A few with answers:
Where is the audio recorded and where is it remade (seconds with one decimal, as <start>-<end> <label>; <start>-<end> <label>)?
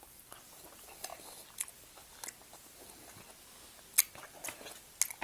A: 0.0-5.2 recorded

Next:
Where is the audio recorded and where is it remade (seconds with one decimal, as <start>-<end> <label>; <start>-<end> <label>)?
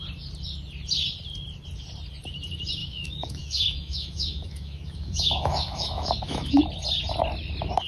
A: 0.0-2.8 recorded; 2.8-6.6 remade; 6.6-7.9 recorded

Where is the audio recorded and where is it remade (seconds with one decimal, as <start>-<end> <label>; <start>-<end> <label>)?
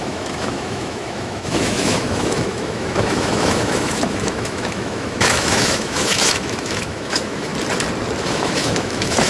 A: 0.0-7.5 remade; 7.5-8.2 recorded; 8.2-9.3 remade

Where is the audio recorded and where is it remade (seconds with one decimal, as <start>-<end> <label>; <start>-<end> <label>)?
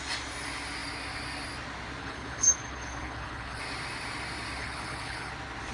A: 0.0-2.0 recorded; 2.0-3.6 remade; 3.6-4.6 recorded; 4.6-5.3 remade; 5.3-5.7 recorded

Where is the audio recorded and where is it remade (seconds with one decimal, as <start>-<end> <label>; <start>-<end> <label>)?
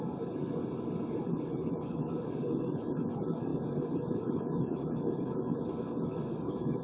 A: 0.0-0.6 remade; 0.6-1.2 recorded; 1.2-6.8 remade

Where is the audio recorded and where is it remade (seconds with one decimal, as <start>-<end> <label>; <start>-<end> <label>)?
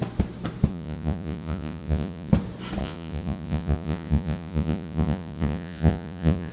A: 0.0-0.7 recorded; 0.7-2.3 remade; 2.3-2.8 recorded; 2.8-6.5 remade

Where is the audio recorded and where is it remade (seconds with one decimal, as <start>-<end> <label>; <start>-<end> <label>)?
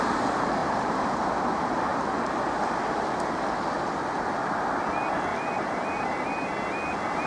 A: 0.0-0.6 recorded; 0.6-1.3 remade; 1.3-5.3 recorded; 5.3-6.2 remade; 6.2-7.3 recorded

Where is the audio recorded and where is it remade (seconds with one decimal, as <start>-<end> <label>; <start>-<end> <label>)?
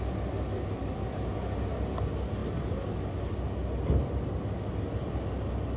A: 0.0-5.8 recorded